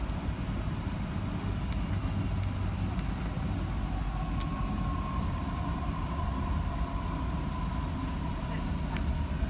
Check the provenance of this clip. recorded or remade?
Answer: recorded